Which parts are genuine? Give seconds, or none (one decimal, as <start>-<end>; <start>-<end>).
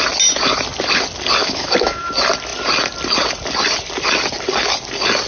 0.0-1.4; 2.1-5.3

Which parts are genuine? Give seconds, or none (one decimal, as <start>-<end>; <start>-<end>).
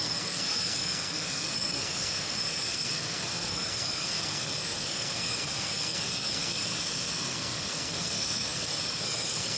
none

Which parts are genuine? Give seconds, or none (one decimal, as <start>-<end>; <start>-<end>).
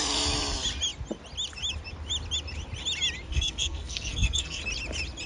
0.0-3.3; 4.6-5.3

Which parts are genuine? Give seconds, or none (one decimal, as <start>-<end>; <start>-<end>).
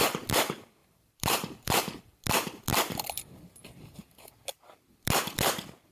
0.0-0.8; 2.0-5.9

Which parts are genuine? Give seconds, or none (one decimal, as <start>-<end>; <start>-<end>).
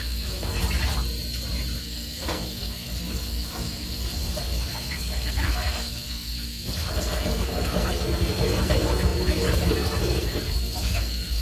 0.6-1.8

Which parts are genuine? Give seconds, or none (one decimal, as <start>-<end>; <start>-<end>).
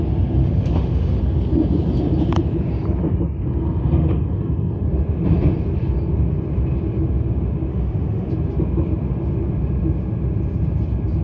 0.0-0.4; 1.2-7.7; 8.3-11.2